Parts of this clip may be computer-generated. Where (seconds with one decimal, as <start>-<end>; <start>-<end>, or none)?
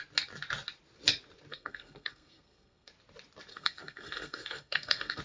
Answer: 1.5-2.9; 3.5-5.2